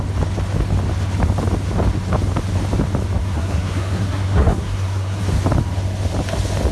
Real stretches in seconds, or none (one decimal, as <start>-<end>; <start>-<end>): 0.0-3.2; 5.2-6.7